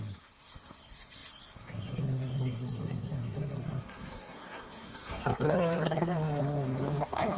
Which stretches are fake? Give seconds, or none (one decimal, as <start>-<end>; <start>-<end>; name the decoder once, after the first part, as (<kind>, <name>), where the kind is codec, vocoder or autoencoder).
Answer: 0.0-7.4 (codec, SNAC)